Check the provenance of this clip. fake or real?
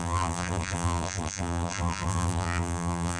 fake